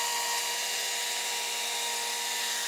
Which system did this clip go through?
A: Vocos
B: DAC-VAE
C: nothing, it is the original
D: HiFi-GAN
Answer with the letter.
C